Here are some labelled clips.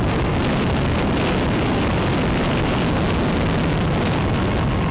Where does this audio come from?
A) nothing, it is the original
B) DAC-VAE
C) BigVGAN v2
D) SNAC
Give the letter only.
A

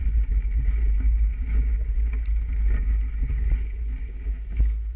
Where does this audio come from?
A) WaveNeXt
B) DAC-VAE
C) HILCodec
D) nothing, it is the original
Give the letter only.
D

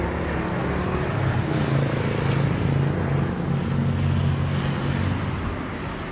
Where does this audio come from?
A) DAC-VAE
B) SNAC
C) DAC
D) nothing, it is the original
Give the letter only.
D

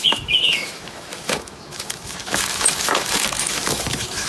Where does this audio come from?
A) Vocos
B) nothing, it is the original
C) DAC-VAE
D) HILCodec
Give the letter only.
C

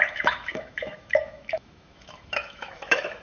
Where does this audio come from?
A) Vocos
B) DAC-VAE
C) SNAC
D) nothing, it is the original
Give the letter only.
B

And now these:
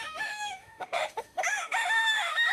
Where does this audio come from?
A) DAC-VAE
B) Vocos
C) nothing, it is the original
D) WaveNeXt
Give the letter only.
A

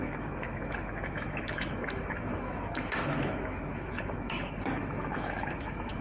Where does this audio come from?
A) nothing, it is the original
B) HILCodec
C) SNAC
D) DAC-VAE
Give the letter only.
D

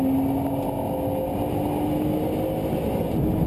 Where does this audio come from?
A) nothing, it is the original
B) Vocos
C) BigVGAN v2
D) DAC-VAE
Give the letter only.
A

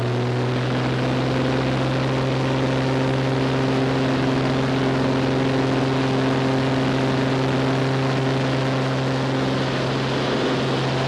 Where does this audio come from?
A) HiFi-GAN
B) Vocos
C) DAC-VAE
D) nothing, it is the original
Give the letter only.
D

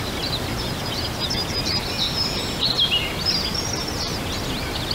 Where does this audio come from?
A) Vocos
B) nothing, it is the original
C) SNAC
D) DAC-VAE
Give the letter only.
B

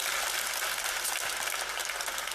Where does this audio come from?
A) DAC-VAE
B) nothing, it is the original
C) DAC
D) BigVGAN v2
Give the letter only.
B